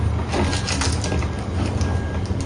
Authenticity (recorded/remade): recorded